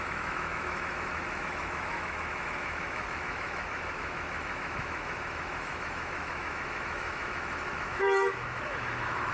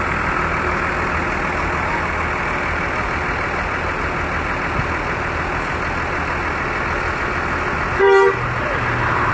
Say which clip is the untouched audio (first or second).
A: second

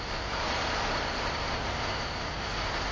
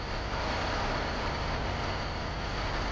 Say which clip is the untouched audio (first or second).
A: second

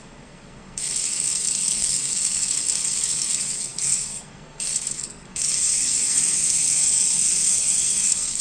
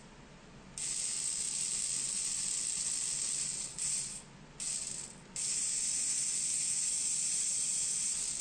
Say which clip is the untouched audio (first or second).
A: second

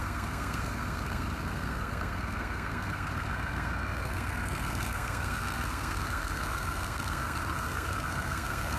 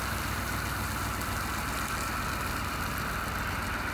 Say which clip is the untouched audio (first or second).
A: second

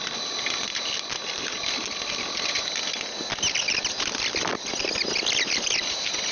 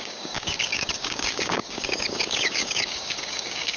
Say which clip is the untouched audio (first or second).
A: first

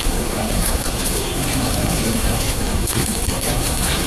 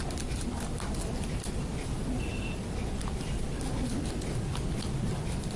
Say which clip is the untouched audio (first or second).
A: second